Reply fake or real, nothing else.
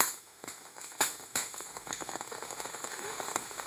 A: fake